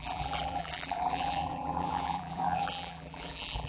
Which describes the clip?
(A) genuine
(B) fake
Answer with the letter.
B